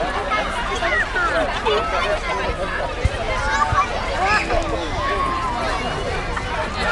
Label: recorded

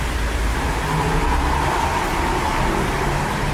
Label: recorded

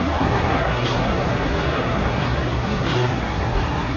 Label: remade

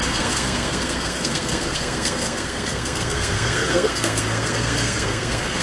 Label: remade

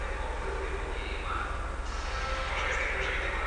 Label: recorded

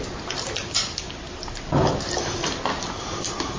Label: recorded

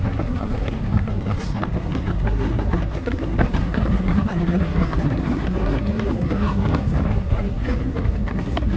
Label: remade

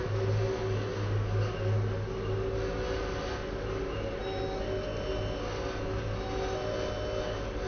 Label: recorded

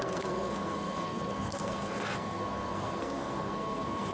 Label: remade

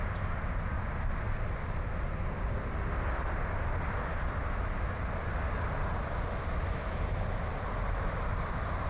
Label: recorded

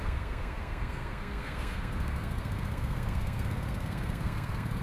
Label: remade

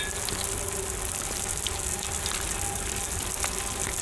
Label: recorded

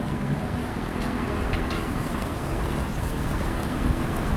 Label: remade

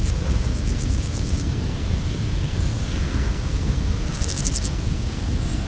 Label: remade